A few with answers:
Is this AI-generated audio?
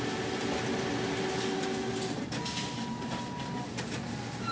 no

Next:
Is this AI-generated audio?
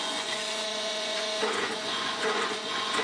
yes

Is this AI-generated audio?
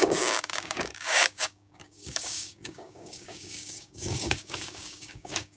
yes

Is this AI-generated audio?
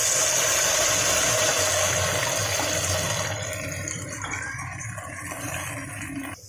no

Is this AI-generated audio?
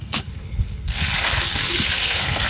yes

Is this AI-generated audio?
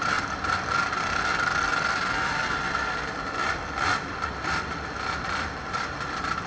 yes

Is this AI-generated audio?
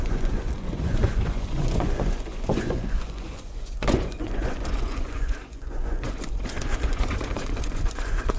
yes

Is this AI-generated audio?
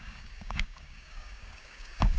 yes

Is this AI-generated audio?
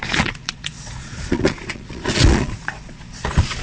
yes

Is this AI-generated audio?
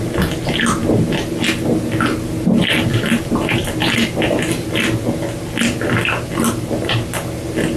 no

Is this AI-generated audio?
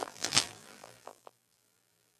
yes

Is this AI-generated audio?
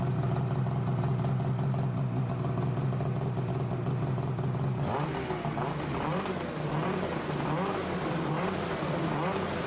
no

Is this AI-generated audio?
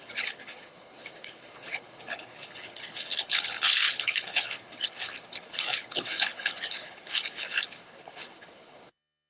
yes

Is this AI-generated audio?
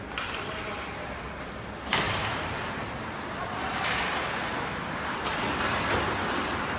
no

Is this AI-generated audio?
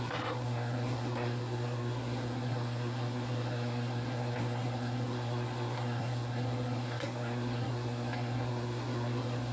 yes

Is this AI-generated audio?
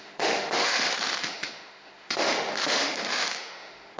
yes